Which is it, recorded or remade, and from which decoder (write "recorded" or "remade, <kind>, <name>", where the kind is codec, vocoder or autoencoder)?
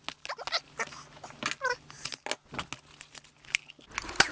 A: recorded